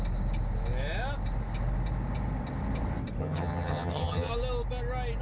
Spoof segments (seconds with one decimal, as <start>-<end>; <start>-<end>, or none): 3.2-4.3